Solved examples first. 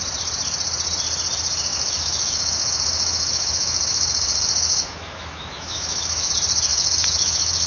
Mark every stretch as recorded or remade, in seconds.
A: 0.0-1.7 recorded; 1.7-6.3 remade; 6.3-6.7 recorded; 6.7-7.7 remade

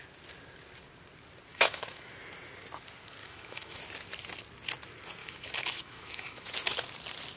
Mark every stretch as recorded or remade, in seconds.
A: 0.0-1.5 recorded; 1.5-2.1 remade; 2.1-3.2 recorded; 3.2-3.8 remade; 3.8-5.2 recorded; 5.2-6.5 remade; 6.5-7.4 recorded

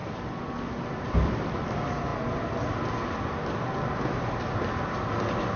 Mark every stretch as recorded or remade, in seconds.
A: 0.0-5.6 recorded

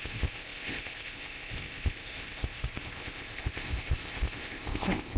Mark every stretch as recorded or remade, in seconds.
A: 0.0-5.2 remade

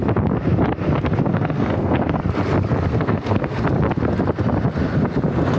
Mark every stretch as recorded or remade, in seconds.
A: 0.0-1.3 recorded; 1.3-2.2 remade; 2.2-2.9 recorded; 2.9-3.6 remade; 3.6-5.6 recorded

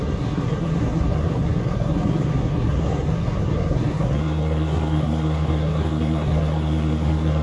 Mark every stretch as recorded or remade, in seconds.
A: 0.0-7.4 remade

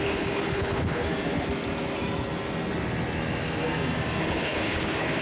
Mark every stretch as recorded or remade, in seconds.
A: 0.0-1.1 remade; 1.1-4.2 recorded; 4.2-5.2 remade

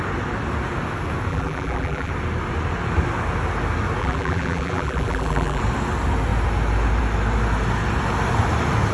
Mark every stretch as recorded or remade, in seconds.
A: 0.0-1.3 recorded; 1.3-2.1 remade; 2.1-4.0 recorded; 4.0-5.6 remade; 5.6-8.9 recorded